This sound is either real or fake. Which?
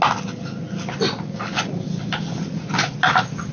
real